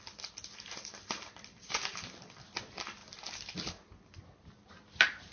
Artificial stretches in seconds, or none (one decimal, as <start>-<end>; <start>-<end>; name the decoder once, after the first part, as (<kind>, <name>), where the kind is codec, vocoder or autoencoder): none